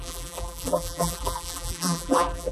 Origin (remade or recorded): remade